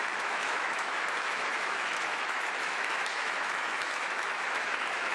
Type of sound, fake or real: fake